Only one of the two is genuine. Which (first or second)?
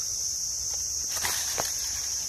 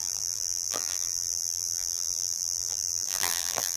first